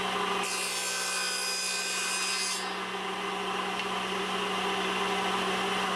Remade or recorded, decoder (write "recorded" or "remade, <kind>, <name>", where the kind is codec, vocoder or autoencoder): recorded